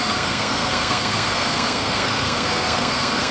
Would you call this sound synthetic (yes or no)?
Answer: yes